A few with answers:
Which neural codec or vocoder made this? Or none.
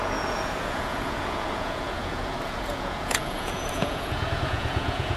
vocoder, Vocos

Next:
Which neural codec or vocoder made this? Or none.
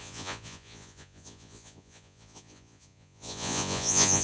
vocoder, Vocos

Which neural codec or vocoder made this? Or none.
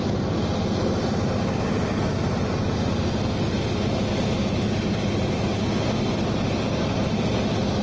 none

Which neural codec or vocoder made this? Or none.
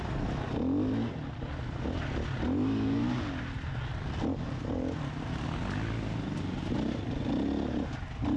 none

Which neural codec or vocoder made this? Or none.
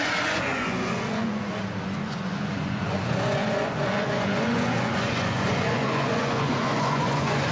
vocoder, Vocos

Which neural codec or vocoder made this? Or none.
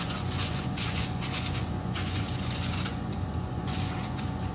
vocoder, Vocos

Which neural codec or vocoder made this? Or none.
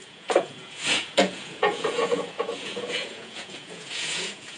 vocoder, Vocos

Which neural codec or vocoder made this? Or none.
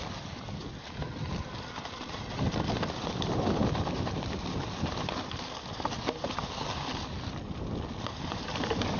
none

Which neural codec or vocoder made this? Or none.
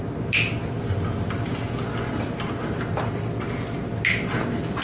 none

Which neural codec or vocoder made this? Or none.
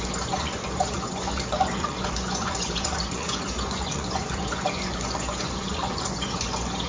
vocoder, Vocos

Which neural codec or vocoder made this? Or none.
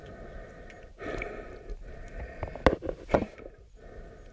none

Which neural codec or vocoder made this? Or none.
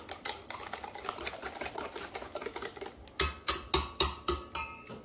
none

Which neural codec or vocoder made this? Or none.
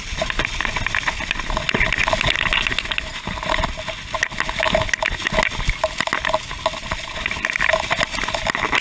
none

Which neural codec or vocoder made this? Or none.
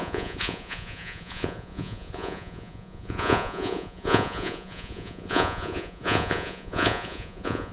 vocoder, Vocos